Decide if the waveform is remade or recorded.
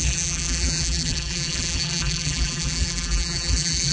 remade